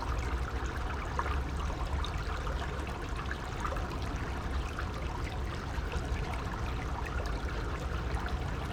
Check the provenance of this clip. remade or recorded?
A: recorded